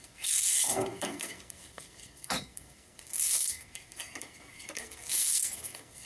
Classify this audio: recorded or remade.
remade